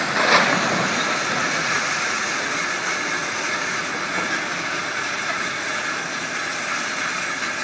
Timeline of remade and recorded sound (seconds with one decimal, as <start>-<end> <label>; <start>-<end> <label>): 0.0-1.4 recorded; 1.4-2.7 remade; 2.7-3.2 recorded; 3.2-5.8 remade; 5.8-7.6 recorded

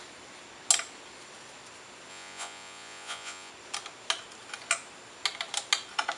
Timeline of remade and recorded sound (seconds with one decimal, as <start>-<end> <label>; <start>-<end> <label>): 0.0-2.1 recorded; 2.1-3.5 remade; 3.5-6.2 recorded